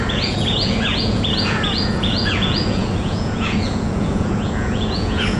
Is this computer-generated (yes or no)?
yes